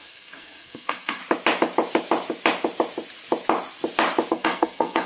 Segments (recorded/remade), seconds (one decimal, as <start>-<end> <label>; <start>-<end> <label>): 0.0-1.2 remade; 1.2-4.3 recorded; 4.3-5.1 remade

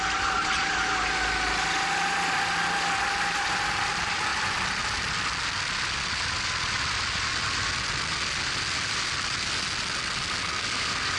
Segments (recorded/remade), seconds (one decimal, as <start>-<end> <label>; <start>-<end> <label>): 0.0-11.2 recorded

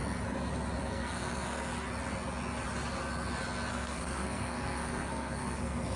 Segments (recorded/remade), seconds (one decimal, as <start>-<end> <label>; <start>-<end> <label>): 0.0-0.8 recorded; 0.8-1.7 remade; 1.7-3.7 recorded; 3.7-6.0 remade

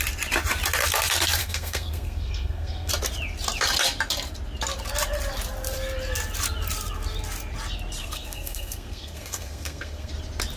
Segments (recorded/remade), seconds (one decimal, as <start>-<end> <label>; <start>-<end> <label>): 0.0-1.4 recorded; 1.4-2.9 remade; 2.9-8.0 recorded; 8.0-10.1 remade; 10.1-10.6 recorded

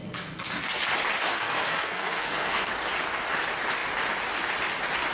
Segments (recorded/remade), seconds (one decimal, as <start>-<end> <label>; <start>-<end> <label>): 0.0-0.8 remade; 0.8-1.3 recorded; 1.3-2.7 remade; 2.7-5.1 recorded